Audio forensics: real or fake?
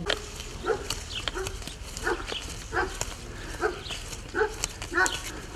real